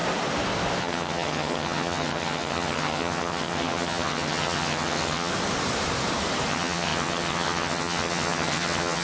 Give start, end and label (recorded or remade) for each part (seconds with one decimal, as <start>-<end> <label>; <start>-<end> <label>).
0.0-0.8 recorded; 0.8-5.3 remade; 5.3-6.5 recorded; 6.5-9.0 remade